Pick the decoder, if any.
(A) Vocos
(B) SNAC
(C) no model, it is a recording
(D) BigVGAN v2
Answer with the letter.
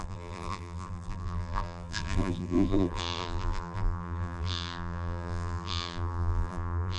D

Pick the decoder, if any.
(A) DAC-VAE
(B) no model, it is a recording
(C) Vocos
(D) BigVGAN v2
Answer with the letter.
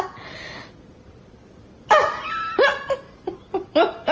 B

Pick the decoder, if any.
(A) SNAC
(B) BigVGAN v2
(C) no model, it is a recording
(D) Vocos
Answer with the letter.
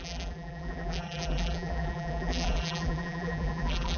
B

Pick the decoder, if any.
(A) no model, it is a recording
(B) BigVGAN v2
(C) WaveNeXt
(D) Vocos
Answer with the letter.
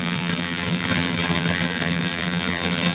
B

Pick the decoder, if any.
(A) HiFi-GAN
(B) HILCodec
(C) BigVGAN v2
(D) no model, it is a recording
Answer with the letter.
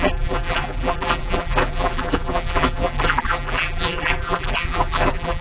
C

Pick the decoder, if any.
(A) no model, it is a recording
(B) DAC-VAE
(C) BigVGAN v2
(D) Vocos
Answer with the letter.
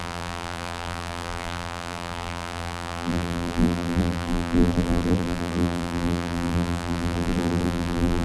C